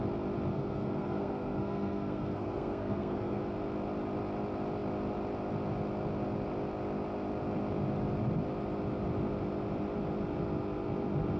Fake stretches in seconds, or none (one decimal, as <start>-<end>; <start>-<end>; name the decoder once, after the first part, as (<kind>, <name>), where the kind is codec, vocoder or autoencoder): 0.5-3.4 (codec, SNAC)